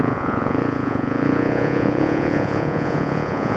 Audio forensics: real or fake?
fake